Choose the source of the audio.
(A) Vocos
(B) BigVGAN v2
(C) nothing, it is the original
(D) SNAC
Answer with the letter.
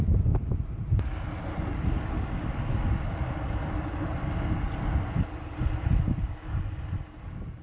C